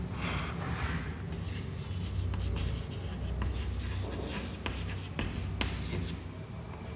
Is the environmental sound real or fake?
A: real